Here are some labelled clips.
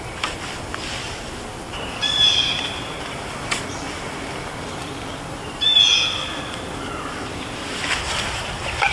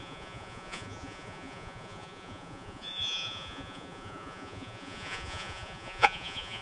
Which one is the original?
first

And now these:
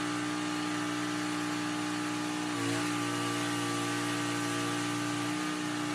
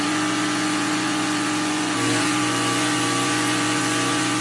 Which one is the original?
first